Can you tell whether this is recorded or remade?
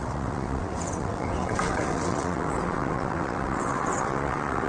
remade